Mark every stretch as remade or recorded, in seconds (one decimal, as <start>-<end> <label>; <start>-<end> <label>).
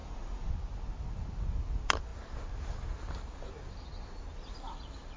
0.0-0.5 remade; 0.5-5.2 recorded